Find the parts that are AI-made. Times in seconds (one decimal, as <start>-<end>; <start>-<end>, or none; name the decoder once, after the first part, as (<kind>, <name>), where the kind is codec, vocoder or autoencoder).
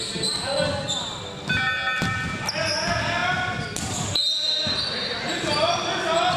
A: none